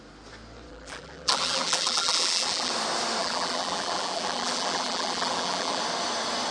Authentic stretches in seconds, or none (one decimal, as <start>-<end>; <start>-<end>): 0.0-0.7; 2.7-3.2; 5.8-6.5